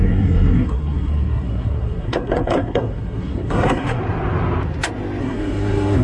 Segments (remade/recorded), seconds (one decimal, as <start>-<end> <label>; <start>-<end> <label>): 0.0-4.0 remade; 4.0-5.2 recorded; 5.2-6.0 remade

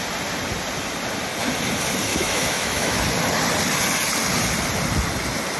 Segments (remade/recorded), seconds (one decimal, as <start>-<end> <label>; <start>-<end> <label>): 0.0-2.1 recorded; 2.1-3.0 remade; 3.0-5.6 recorded

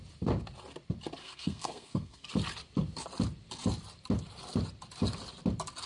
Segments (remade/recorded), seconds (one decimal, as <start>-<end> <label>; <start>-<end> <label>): 0.0-1.2 recorded; 1.2-2.3 remade; 2.3-5.9 recorded

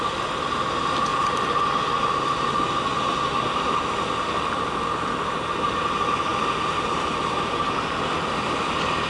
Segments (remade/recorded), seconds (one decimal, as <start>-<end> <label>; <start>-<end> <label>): 0.0-9.1 recorded

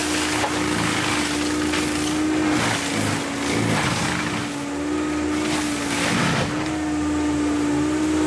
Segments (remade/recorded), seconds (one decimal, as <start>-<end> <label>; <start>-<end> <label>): 0.0-8.3 recorded

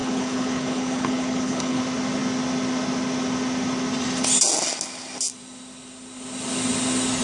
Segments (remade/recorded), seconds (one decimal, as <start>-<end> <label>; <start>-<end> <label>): 0.0-1.8 remade; 1.8-7.2 recorded